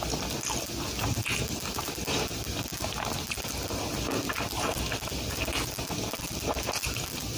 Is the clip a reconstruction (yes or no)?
no